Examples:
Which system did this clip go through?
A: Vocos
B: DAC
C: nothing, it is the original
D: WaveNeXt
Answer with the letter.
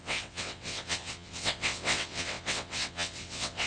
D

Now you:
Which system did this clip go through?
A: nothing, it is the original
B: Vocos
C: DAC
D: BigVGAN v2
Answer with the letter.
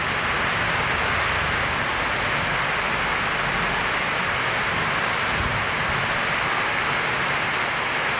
A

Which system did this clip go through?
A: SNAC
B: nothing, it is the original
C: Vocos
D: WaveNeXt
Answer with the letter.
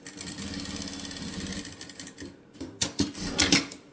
B